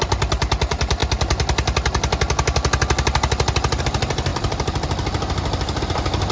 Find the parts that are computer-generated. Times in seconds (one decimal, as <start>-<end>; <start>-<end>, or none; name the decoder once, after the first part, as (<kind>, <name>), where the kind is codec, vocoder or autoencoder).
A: 0.0-1.0 (vocoder, BigVGAN v2); 3.8-6.3